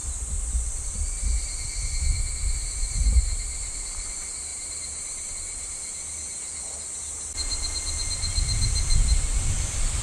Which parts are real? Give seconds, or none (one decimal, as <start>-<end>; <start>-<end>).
0.0-4.5; 5.3-10.0